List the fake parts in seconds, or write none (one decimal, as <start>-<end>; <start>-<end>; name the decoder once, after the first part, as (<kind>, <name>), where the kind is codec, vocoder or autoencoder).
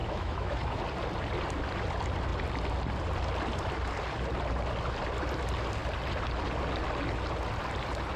0.0-0.8 (autoencoder, DAC-VAE)